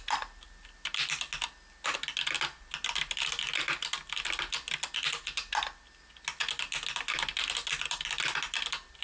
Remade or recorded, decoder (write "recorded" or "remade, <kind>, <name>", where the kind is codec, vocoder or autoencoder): recorded